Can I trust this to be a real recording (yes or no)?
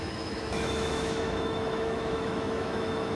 no